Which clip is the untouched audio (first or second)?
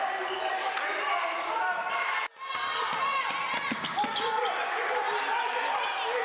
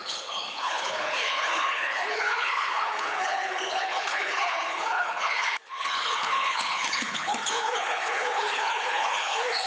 first